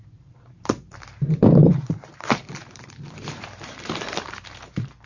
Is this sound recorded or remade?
remade